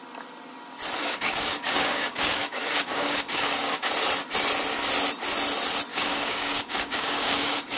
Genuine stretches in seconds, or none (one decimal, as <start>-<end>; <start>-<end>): 0.0-1.0; 3.9-5.9